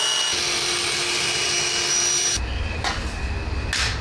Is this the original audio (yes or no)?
yes